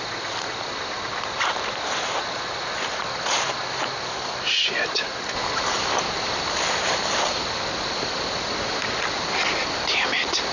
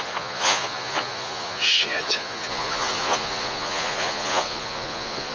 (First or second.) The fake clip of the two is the second